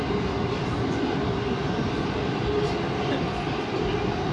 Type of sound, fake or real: real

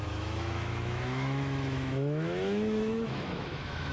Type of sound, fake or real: fake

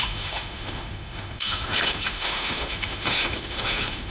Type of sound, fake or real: fake